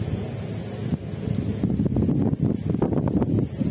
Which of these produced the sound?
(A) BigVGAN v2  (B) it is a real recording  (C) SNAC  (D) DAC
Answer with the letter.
B